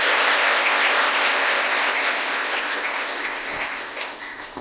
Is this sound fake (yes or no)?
yes